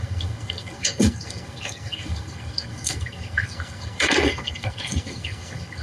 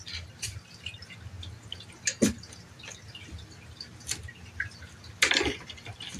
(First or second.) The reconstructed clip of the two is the first